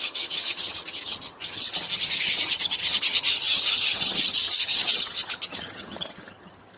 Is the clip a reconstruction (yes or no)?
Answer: yes